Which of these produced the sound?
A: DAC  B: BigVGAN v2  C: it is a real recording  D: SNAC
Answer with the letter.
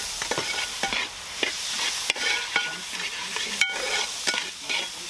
C